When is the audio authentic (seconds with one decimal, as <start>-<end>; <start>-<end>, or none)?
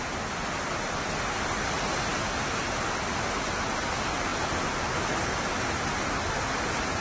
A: 0.0-7.0